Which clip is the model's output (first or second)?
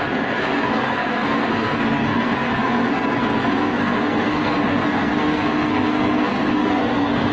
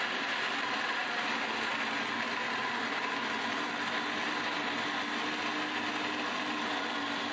first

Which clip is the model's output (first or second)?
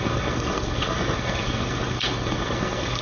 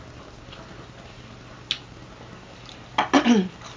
first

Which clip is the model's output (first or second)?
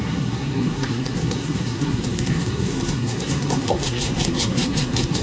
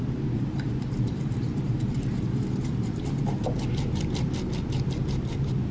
first